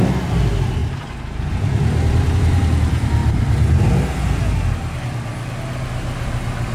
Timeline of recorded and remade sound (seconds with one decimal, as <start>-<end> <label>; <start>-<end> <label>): 0.0-0.8 recorded; 0.8-1.5 remade; 1.5-2.1 recorded; 2.1-2.6 remade; 2.6-6.7 recorded